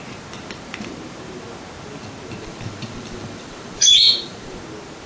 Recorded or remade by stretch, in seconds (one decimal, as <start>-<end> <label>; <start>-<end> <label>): 0.0-2.4 recorded; 2.4-4.6 remade; 4.6-5.1 recorded